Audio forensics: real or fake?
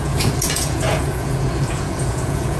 fake